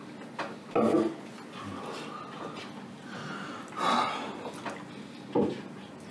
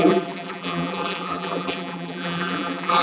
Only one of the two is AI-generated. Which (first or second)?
second